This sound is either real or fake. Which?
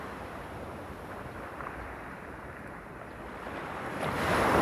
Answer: fake